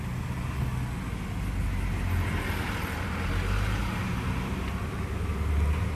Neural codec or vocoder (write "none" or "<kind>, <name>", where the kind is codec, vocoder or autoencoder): none